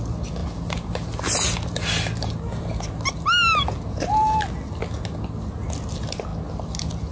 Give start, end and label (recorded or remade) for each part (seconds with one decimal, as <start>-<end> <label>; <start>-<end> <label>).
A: 0.0-7.1 recorded